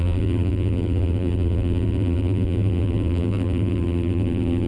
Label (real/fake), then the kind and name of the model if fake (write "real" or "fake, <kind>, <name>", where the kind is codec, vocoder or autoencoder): fake, vocoder, BigVGAN v2